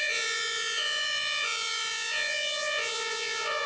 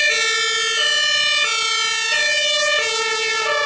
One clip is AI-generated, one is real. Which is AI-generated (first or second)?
first